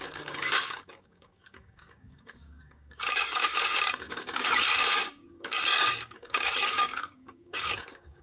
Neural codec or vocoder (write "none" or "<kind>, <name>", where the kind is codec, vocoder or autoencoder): codec, DAC